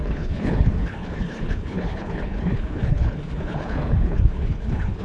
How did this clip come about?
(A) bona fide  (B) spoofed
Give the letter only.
B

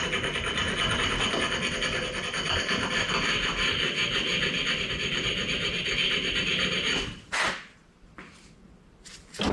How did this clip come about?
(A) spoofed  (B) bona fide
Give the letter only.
B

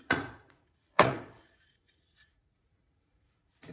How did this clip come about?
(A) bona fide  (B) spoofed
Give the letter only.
B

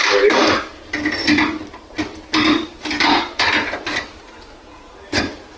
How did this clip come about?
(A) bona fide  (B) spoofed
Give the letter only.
B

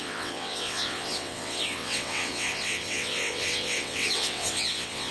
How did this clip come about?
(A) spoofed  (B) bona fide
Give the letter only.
A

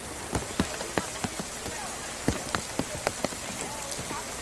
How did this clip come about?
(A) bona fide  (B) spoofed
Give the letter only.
A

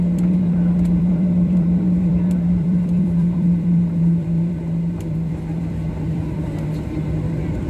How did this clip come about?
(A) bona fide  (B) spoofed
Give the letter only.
B